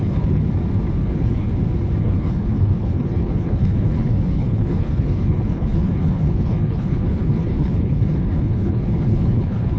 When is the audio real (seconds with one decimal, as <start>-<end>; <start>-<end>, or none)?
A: 0.4-1.0; 1.5-2.0